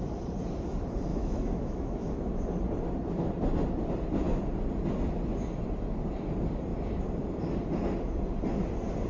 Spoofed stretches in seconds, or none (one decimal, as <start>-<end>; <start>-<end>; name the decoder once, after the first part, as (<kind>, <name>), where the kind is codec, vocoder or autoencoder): 1.1-2.4 (autoencoder, DAC-VAE)